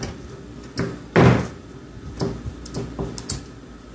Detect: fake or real real